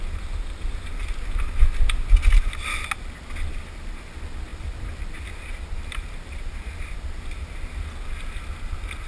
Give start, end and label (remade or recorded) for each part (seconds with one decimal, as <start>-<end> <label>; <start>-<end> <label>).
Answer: 0.0-9.1 recorded